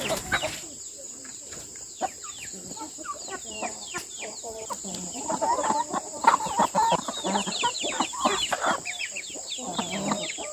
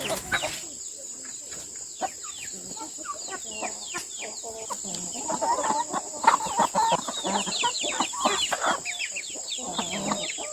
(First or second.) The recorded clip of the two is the second